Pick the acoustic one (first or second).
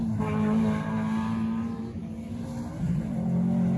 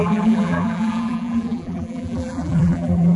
first